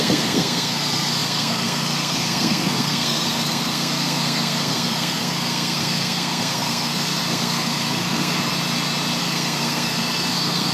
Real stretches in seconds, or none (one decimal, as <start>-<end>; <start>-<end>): 8.5-9.2